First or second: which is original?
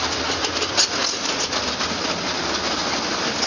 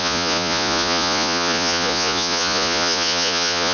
first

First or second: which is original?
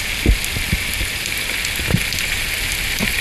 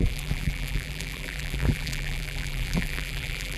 first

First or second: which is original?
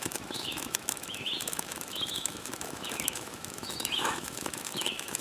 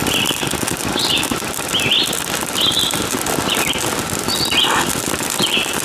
second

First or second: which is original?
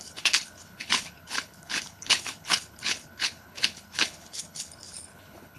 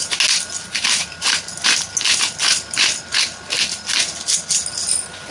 second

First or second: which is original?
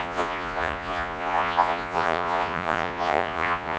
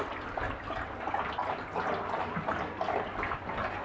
second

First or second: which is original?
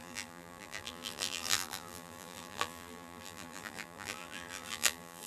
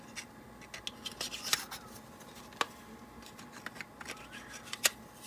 second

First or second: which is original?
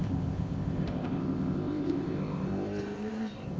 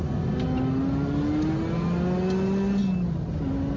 second